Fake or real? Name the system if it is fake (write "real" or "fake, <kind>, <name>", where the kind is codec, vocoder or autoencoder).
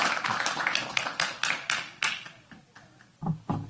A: real